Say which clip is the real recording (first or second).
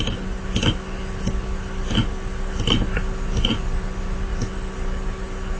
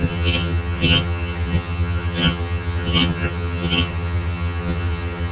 first